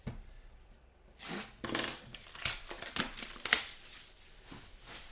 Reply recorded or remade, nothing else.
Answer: recorded